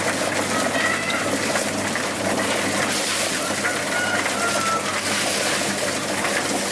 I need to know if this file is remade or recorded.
recorded